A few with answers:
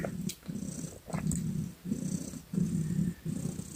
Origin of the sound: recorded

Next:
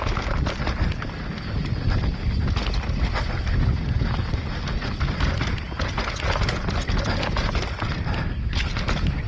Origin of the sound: recorded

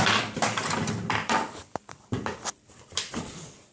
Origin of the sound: remade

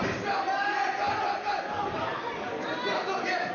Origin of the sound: recorded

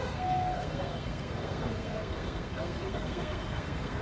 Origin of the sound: remade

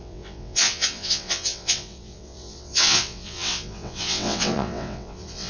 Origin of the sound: remade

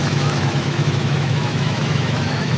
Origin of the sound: remade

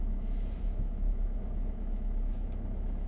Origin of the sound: remade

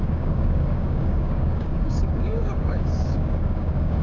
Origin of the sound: remade